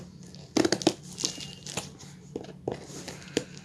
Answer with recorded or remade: recorded